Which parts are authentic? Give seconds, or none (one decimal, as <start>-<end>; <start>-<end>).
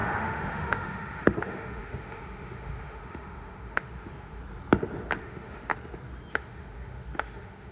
4.4-5.2; 5.7-6.3